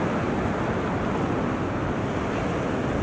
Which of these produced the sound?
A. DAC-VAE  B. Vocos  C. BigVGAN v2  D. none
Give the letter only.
D